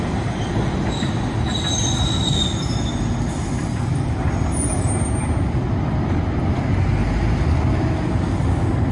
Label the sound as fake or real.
real